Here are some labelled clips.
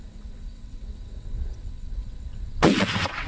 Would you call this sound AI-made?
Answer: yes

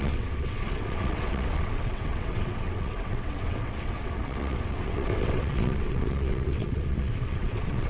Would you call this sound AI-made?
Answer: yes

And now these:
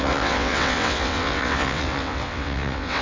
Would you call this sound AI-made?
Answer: yes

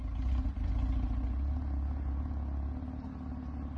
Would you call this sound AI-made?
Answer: no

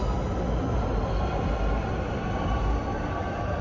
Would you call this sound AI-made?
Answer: no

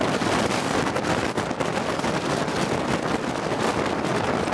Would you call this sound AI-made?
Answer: no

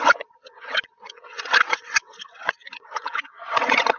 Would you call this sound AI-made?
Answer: yes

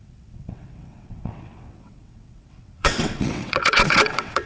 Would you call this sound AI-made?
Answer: yes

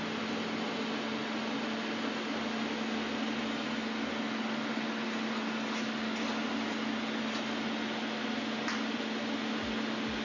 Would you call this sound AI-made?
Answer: no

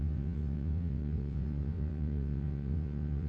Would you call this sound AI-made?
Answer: yes